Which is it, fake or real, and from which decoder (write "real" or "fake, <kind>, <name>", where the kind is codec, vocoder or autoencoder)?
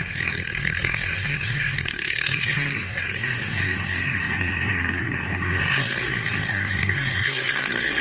fake, codec, SNAC